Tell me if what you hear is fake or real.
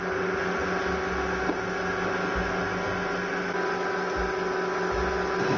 real